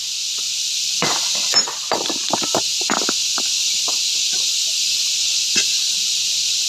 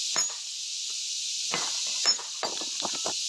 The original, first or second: second